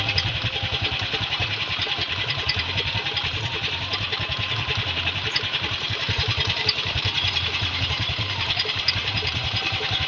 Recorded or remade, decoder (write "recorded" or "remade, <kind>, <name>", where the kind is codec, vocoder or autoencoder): remade, vocoder, BigVGAN v2